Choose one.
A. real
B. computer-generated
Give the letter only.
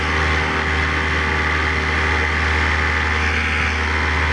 A